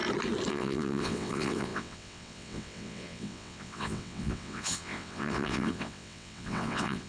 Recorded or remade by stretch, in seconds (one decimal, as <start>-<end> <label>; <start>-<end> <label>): 0.0-0.5 recorded; 0.5-7.1 remade